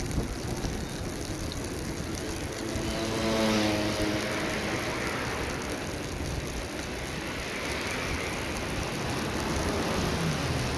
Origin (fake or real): real